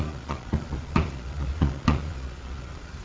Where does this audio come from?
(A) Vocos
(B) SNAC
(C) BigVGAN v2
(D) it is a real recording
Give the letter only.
A